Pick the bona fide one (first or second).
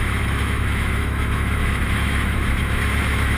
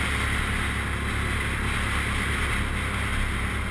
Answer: second